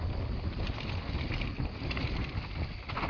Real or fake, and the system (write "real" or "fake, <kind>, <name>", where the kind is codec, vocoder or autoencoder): real